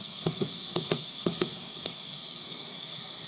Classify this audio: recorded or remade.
remade